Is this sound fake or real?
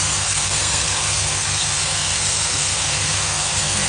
fake